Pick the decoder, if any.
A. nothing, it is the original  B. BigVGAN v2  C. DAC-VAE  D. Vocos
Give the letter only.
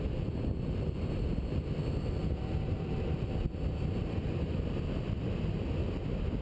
B